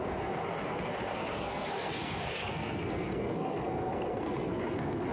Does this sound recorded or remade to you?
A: remade